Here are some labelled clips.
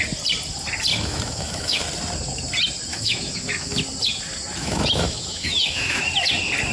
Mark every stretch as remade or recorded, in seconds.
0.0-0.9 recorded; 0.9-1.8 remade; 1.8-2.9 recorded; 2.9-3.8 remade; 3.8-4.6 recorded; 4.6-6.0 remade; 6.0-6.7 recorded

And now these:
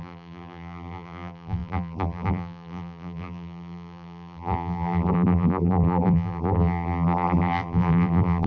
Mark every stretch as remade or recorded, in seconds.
0.0-8.5 remade

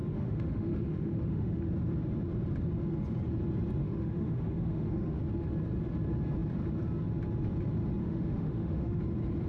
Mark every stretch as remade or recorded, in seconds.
0.0-1.6 remade; 1.6-3.8 recorded; 3.8-5.2 remade; 5.2-8.0 recorded; 8.0-9.0 remade; 9.0-9.5 recorded

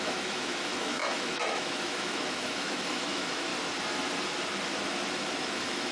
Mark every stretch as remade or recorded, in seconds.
0.0-3.5 remade; 3.5-5.4 recorded; 5.4-5.9 remade